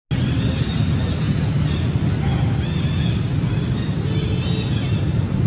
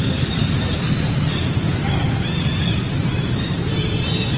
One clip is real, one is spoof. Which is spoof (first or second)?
second